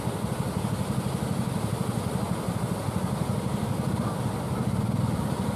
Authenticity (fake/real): real